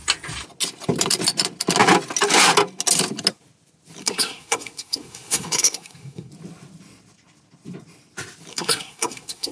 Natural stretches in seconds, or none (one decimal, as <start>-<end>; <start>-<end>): 0.0-4.0; 6.3-8.5